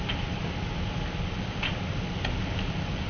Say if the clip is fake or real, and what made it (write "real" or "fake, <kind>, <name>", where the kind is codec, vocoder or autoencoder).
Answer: real